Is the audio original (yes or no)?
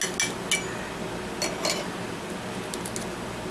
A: yes